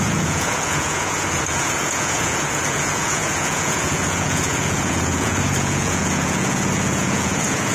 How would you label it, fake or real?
fake